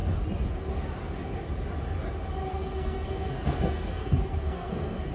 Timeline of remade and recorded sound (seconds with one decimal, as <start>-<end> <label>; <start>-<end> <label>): 0.0-2.5 recorded; 2.5-5.1 remade

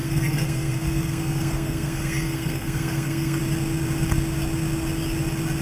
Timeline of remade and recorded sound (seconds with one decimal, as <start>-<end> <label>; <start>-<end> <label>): 0.0-3.4 remade; 3.4-5.6 recorded

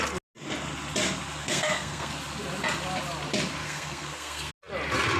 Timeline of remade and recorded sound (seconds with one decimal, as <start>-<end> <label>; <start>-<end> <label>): 0.0-1.4 recorded; 1.4-2.1 remade; 2.1-3.6 recorded; 3.6-4.5 remade; 4.5-5.2 recorded

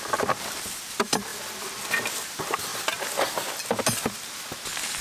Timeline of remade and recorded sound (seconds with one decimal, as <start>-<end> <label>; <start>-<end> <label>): 0.0-5.0 recorded

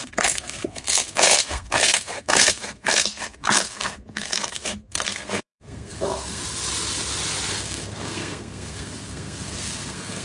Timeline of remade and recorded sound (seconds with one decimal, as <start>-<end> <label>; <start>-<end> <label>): 0.0-6.4 remade; 6.4-7.5 recorded; 7.5-10.2 remade

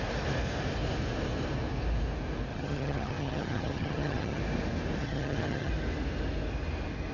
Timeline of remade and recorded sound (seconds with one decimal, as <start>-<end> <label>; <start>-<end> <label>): 0.0-2.5 recorded; 2.5-4.4 remade; 4.4-5.0 recorded; 5.0-5.7 remade; 5.7-7.1 recorded

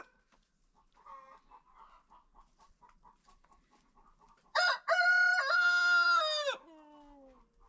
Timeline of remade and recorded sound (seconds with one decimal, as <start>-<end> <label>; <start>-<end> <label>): 0.0-2.5 recorded; 2.5-6.2 remade; 6.2-7.7 recorded